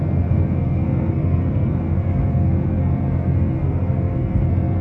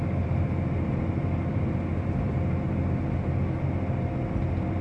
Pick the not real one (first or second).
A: first